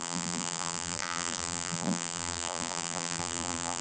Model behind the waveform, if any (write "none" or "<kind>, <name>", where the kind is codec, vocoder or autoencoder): vocoder, BigVGAN v2